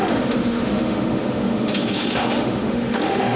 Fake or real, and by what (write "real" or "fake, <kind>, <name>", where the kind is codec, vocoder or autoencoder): fake, autoencoder, DAC-VAE